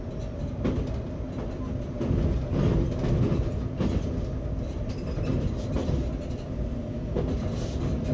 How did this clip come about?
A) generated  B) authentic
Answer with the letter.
B